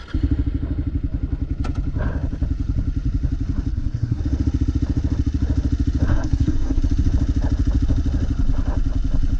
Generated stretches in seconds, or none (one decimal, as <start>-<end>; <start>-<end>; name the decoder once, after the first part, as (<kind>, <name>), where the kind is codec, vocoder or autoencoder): 3.7-4.2 (codec, SNAC); 6.1-6.8